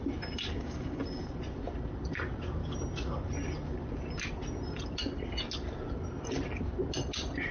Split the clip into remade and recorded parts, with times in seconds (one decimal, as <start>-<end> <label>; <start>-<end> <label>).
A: 0.0-0.5 recorded; 0.5-1.0 remade; 1.0-7.5 recorded